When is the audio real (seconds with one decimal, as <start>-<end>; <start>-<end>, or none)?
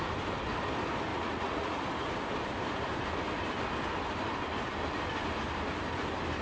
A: 0.0-1.1; 1.8-6.4